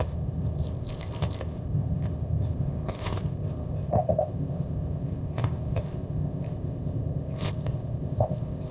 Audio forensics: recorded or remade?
remade